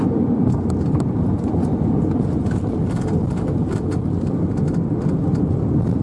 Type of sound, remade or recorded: recorded